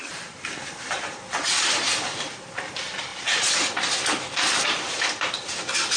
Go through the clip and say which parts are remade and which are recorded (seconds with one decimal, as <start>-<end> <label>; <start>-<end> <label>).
0.0-6.0 recorded